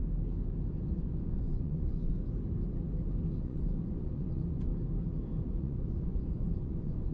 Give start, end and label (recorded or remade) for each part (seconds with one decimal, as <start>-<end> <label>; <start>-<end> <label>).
0.0-0.9 recorded; 0.9-2.1 remade; 2.1-3.4 recorded; 3.4-4.7 remade; 4.7-5.6 recorded; 5.6-7.1 remade